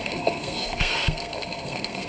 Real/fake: fake